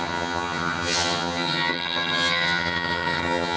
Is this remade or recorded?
remade